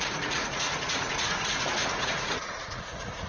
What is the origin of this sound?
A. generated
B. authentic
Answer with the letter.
A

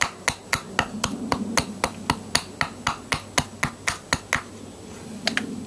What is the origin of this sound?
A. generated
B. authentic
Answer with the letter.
B